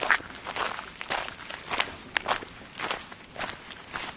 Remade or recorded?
recorded